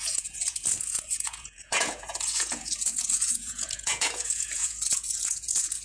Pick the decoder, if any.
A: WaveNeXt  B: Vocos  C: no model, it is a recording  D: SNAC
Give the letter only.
B